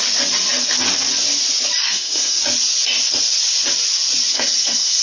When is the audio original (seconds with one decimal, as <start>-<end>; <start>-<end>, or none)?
0.0-1.8; 2.4-4.3